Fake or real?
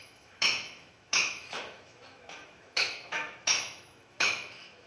fake